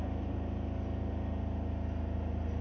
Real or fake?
real